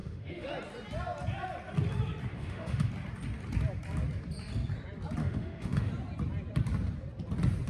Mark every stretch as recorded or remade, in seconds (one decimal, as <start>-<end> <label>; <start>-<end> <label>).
0.0-0.5 remade; 0.5-2.3 recorded; 2.3-2.9 remade; 2.9-5.2 recorded; 5.2-5.9 remade; 5.9-7.7 recorded